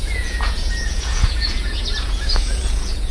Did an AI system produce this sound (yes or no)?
yes